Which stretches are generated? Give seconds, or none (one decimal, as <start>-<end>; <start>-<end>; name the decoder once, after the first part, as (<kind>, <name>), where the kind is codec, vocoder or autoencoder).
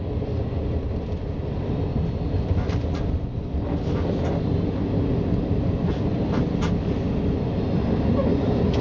none